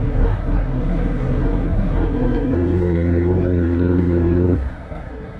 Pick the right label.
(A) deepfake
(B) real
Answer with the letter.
A